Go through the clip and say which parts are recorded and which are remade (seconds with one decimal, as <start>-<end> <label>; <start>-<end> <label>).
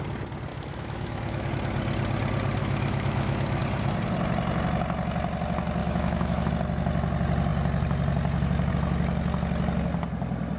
0.0-0.5 recorded; 0.5-1.5 remade; 1.5-2.6 recorded; 2.6-3.6 remade; 3.6-5.8 recorded; 5.8-6.5 remade; 6.5-10.6 recorded